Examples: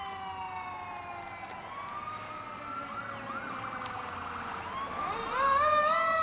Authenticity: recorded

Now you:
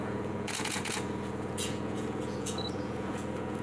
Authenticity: remade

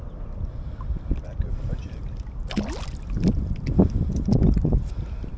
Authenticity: recorded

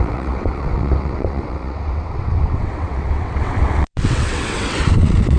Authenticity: remade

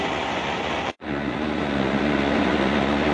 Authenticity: remade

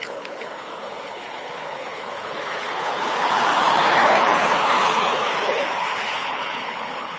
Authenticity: remade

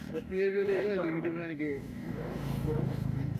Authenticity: remade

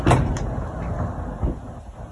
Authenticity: recorded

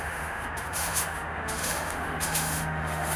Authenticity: remade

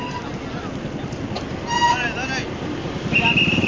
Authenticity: recorded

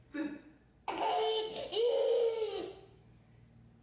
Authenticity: recorded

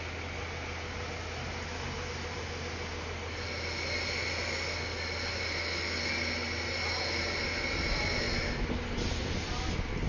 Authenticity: recorded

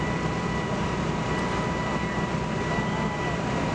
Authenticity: recorded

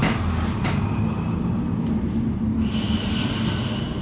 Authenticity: recorded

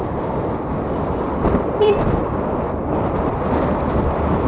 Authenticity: remade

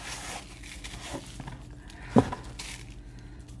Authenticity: recorded